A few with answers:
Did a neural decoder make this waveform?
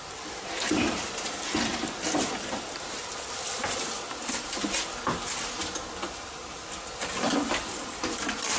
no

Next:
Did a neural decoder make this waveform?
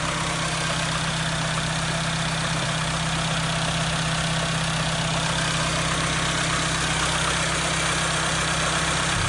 no